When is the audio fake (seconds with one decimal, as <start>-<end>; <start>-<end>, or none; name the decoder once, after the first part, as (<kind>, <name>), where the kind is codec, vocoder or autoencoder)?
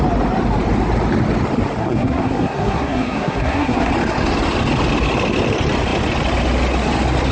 1.8-3.9 (codec, SNAC)